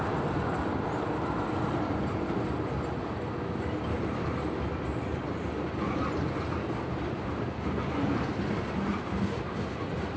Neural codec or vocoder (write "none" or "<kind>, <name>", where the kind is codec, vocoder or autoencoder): none